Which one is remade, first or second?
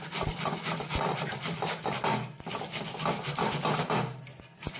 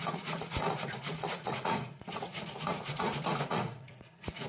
second